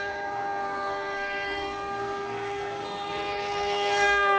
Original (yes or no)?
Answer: no